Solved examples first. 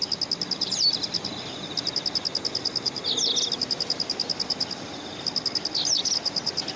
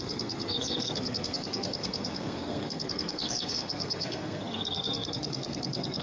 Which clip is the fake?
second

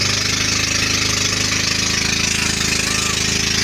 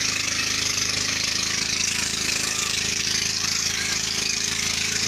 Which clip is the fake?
second